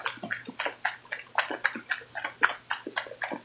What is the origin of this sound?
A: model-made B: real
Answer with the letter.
B